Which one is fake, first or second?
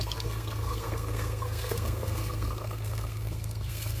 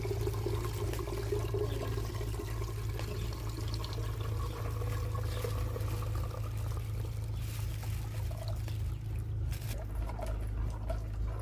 first